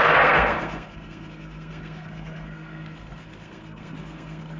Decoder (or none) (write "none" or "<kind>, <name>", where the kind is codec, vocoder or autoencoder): codec, SNAC